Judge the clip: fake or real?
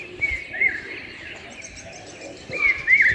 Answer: real